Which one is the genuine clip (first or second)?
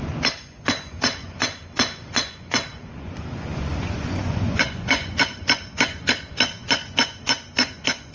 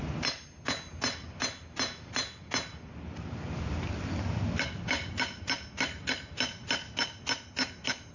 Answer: second